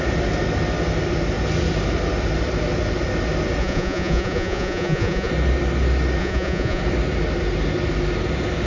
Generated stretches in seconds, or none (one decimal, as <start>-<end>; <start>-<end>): 3.6-5.3; 6.2-6.8